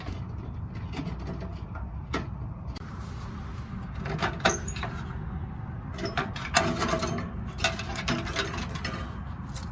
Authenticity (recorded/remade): recorded